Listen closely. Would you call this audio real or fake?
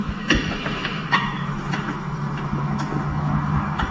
fake